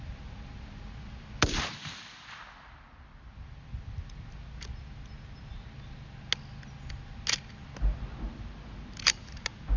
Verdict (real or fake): real